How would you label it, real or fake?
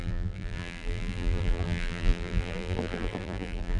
fake